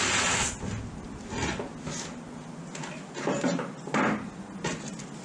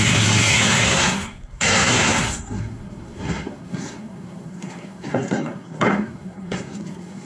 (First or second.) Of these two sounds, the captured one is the first